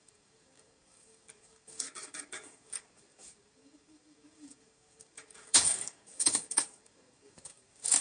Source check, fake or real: fake